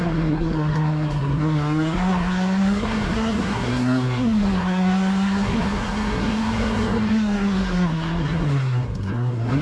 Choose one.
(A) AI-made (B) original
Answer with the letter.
A